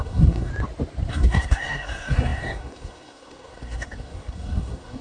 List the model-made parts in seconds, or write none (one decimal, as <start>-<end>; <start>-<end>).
0.0-0.5; 1.1-5.0